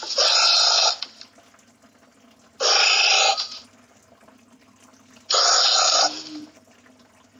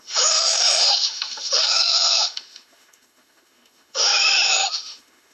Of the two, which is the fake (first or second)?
second